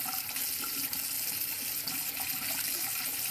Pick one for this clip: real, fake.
real